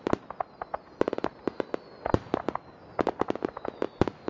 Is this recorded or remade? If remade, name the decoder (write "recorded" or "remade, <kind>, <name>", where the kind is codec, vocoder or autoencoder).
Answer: recorded